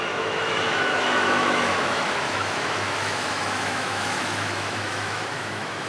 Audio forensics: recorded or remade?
remade